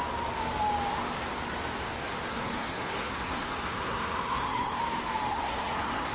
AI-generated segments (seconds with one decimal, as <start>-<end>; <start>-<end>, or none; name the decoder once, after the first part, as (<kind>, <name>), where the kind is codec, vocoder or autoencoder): 2.3-4.8 (codec, SNAC); 5.3-6.1